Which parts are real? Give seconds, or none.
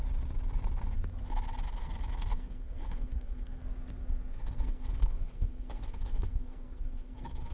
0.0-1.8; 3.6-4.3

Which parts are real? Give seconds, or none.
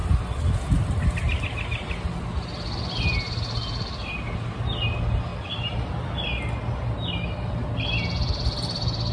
0.0-9.1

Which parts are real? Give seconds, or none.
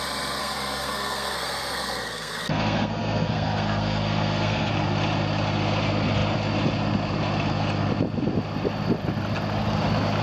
0.0-0.4; 4.7-10.2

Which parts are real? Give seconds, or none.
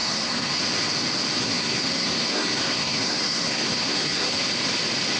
0.6-1.4; 4.5-5.2